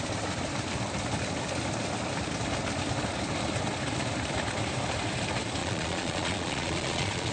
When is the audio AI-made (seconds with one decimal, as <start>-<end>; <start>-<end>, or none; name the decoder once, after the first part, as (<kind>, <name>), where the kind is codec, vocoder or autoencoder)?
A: 5.6-7.3 (vocoder, Vocos)

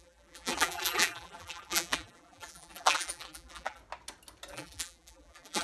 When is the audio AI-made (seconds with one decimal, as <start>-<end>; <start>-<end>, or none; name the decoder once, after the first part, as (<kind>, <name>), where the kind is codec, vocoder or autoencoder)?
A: 0.0-3.8 (vocoder, BigVGAN v2); 4.5-5.6

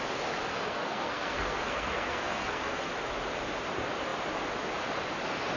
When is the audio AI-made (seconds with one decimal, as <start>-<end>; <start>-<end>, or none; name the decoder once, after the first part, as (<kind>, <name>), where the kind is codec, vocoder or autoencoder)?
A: 0.5-2.9 (codec, SNAC)

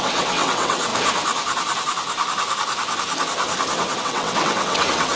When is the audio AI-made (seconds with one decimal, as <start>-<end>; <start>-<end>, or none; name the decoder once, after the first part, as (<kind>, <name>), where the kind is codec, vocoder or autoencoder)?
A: 0.0-0.9 (vocoder, WaveNeXt); 4.0-5.2

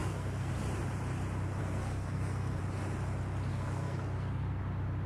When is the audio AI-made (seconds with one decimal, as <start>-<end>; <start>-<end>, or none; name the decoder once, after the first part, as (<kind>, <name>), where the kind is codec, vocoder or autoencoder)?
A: 0.0-0.5 (codec, SNAC); 1.6-2.6; 3.5-4.6

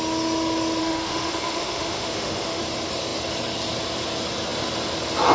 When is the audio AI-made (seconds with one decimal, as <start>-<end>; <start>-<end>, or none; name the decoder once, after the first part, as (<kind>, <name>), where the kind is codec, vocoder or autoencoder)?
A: 0.8-2.6 (autoencoder, DAC-VAE)